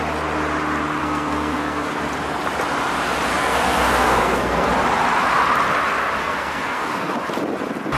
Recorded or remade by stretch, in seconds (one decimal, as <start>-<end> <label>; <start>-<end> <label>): 0.0-1.0 recorded; 1.0-1.9 remade; 1.9-3.3 recorded; 3.3-4.7 remade; 4.7-6.2 recorded; 6.2-7.1 remade; 7.1-8.0 recorded